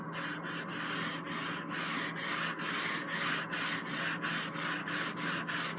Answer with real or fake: real